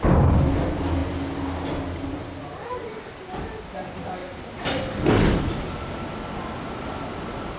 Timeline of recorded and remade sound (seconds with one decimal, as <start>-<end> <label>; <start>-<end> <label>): 0.0-7.6 recorded